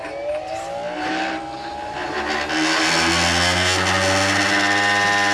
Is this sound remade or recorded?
recorded